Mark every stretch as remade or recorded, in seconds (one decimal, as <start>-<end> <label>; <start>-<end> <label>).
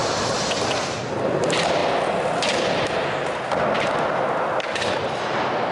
0.0-5.7 recorded